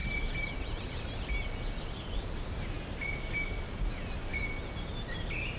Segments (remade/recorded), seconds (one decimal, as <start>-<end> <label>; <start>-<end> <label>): 0.0-5.6 recorded